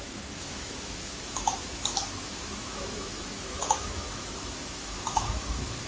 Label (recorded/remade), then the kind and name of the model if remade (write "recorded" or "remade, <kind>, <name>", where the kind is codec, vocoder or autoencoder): remade, autoencoder, DAC-VAE